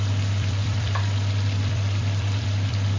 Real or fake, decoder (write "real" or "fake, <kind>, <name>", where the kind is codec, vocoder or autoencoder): fake, vocoder, BigVGAN v2